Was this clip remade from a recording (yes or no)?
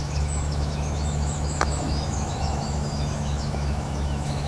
yes